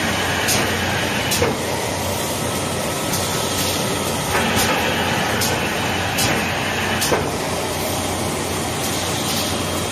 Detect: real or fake real